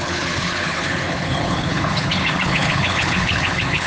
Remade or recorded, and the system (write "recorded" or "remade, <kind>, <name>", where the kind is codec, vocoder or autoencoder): remade, codec, HILCodec